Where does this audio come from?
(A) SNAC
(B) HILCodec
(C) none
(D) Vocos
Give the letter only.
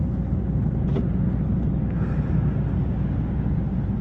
C